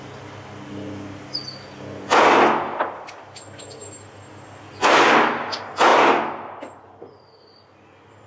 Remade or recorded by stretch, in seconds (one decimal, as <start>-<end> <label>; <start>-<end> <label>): 0.0-8.3 recorded

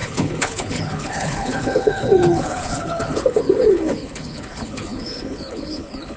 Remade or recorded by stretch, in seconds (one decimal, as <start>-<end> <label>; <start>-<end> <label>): 0.0-6.2 remade

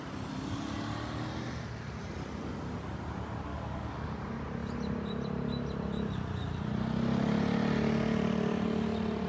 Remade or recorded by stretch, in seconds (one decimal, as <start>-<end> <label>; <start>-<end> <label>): 0.0-3.5 recorded; 3.5-4.1 remade; 4.1-9.3 recorded

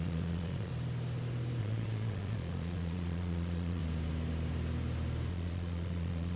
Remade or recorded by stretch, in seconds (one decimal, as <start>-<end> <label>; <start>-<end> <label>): 0.0-0.7 remade; 0.7-1.6 recorded; 1.6-3.8 remade; 3.8-5.3 recorded; 5.3-6.4 remade

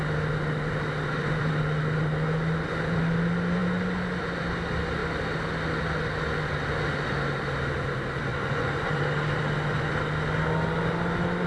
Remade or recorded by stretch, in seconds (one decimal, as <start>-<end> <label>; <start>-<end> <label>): 0.0-8.3 recorded; 8.3-8.9 remade; 8.9-11.5 recorded